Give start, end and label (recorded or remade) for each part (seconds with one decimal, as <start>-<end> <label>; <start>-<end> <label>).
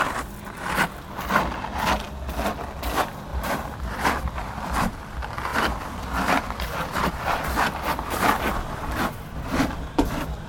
0.0-3.3 recorded; 3.3-4.1 remade; 4.1-5.5 recorded; 5.5-7.1 remade; 7.1-10.5 recorded